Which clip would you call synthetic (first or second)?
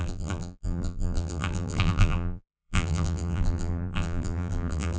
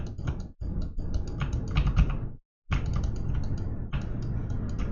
first